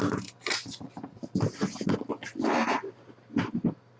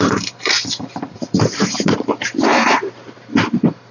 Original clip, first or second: first